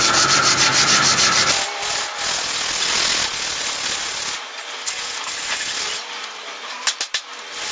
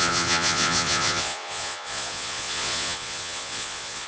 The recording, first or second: first